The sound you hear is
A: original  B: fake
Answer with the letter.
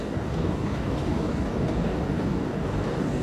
B